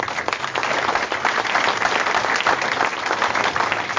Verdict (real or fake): real